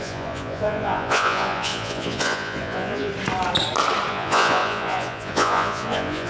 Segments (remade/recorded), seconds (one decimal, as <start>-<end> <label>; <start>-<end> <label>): 0.0-3.1 remade; 3.1-4.1 recorded; 4.1-6.3 remade

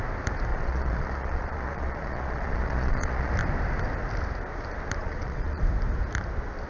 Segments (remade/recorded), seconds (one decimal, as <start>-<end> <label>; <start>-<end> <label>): 0.0-0.5 recorded; 0.5-3.3 remade; 3.3-5.0 recorded; 5.0-5.6 remade; 5.6-6.7 recorded

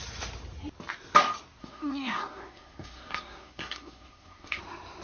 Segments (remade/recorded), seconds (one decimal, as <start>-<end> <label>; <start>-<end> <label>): 0.0-1.6 recorded; 1.6-4.6 remade; 4.6-5.0 recorded

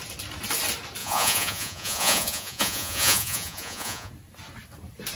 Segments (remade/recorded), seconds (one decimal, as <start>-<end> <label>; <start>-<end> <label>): 0.0-1.0 recorded; 1.0-4.1 remade; 4.1-5.1 recorded

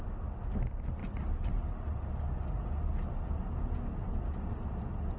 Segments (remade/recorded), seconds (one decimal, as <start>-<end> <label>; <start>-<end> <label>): 0.0-5.2 recorded

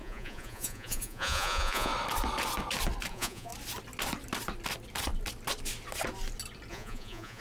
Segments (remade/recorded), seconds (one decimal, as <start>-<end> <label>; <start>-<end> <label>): 0.0-1.9 remade; 1.9-3.1 recorded; 3.1-3.5 remade; 3.5-6.7 recorded; 6.7-7.4 remade